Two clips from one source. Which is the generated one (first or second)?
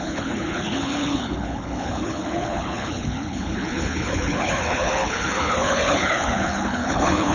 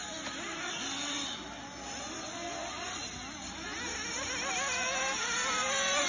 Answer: first